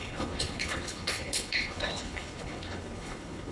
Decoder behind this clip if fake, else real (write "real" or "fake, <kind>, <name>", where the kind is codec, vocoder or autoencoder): fake, codec, HILCodec